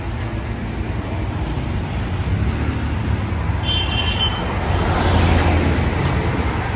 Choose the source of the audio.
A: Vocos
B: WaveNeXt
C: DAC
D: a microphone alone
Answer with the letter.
D